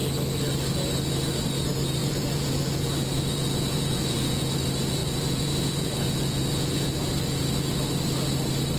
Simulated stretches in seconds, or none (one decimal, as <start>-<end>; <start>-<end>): 2.0-4.5; 5.0-7.1